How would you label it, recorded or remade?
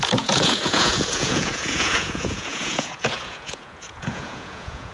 remade